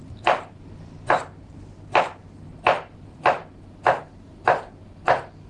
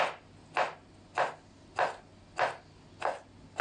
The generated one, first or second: first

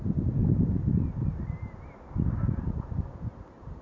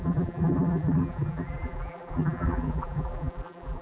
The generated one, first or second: second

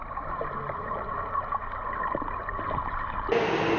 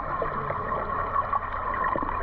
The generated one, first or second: first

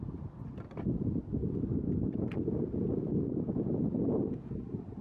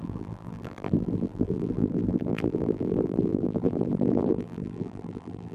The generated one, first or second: second